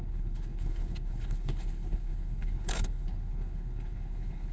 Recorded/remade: remade